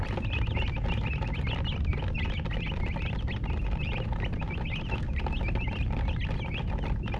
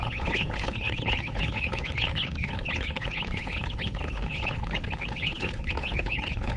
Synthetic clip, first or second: second